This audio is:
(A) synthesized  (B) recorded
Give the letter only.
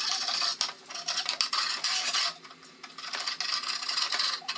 B